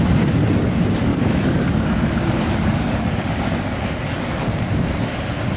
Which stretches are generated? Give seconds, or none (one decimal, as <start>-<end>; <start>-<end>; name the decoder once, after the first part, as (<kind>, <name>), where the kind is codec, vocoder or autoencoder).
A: 1.1-4.5 (codec, DAC)